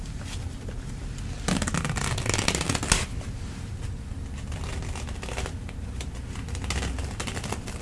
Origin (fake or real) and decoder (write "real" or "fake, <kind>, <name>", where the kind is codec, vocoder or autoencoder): real